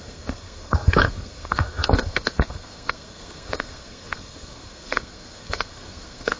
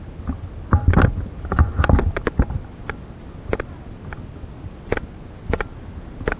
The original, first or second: second